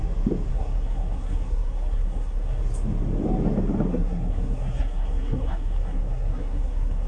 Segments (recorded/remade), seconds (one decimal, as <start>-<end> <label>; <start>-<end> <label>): 0.0-0.5 recorded; 0.5-2.6 remade; 2.6-3.9 recorded; 3.9-7.1 remade